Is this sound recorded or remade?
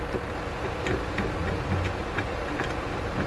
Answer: remade